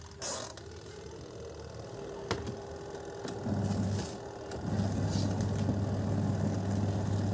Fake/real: real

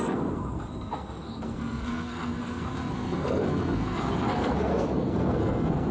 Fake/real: fake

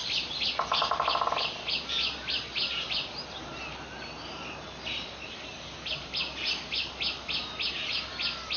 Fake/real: real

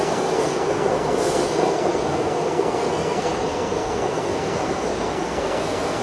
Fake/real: fake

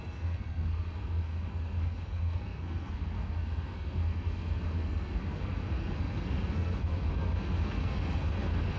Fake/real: fake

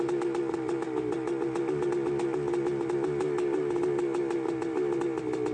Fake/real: real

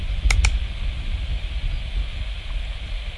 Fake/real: real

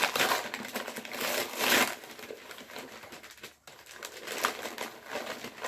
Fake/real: real